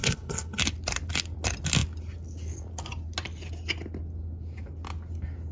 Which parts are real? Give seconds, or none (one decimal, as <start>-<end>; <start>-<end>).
0.6-5.5